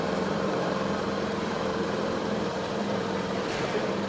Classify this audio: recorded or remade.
remade